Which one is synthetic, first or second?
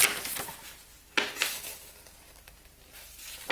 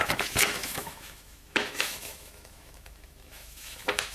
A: second